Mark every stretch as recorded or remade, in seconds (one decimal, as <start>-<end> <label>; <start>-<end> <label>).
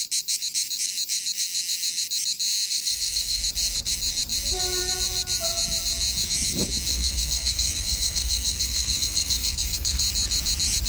0.0-2.7 recorded; 2.7-3.4 remade; 3.4-6.9 recorded; 6.9-10.0 remade; 10.0-10.9 recorded